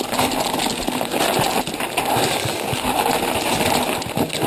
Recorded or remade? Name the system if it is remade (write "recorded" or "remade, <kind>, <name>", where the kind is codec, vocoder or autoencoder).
recorded